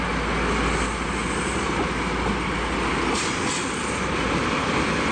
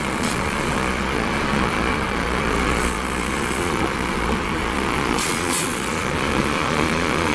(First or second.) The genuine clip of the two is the first